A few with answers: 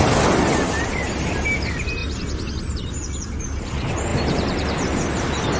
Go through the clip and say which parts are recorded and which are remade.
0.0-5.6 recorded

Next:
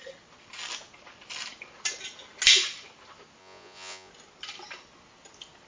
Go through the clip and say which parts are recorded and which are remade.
0.0-3.4 recorded; 3.4-4.1 remade; 4.1-5.7 recorded

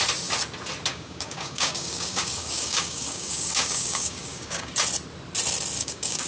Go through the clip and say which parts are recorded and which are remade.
0.0-0.9 recorded; 0.9-4.7 remade; 4.7-5.8 recorded; 5.8-6.3 remade